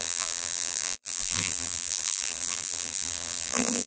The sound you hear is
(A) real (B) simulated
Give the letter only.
B